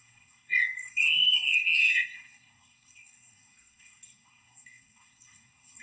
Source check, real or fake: fake